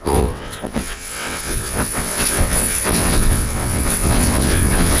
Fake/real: fake